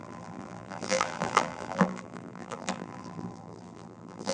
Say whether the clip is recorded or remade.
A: remade